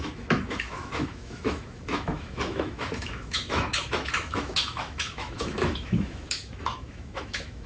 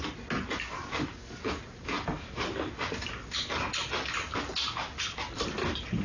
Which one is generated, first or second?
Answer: first